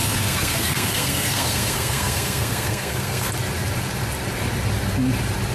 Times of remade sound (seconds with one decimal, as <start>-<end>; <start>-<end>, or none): 0.0-3.3